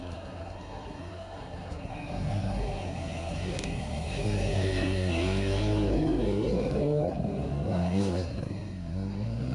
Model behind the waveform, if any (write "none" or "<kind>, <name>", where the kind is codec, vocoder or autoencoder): codec, SNAC